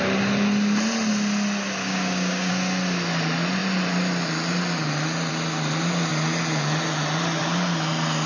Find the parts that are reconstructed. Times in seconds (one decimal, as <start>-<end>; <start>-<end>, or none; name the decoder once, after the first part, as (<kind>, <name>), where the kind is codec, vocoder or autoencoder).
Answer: 1.8-2.5 (codec, DAC)